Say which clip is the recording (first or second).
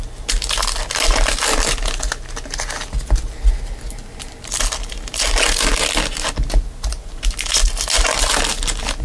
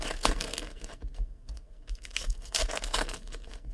first